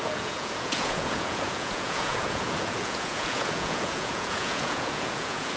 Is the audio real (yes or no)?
no